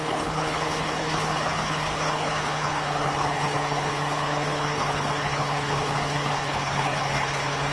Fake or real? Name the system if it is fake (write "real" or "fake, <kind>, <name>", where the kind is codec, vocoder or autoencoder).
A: fake, codec, HILCodec